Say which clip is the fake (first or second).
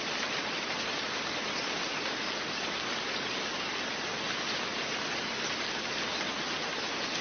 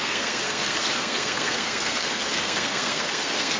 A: second